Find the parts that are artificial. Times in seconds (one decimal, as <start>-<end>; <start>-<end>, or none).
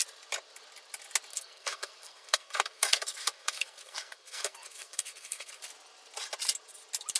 1.3-5.6